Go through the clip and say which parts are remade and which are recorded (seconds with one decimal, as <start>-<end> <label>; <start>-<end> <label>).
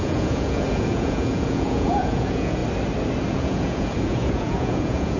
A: 0.0-2.6 remade; 2.6-3.3 recorded; 3.3-5.2 remade